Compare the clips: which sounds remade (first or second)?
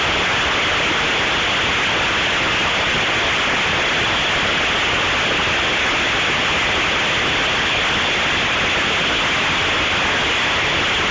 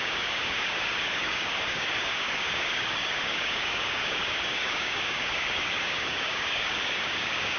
second